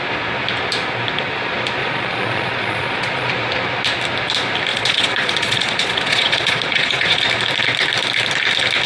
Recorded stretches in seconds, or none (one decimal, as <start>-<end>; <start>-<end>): 0.0-1.8; 3.3-4.7; 7.2-8.9